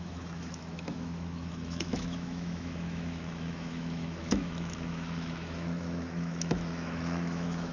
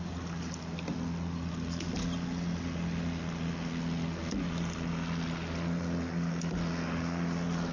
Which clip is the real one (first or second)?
second